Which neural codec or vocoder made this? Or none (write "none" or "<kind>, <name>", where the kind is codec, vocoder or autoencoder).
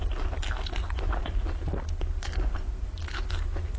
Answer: none